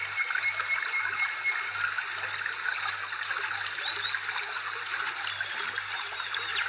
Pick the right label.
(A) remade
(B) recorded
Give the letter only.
B